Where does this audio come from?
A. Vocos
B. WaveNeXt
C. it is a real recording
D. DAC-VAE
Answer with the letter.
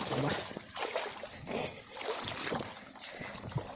C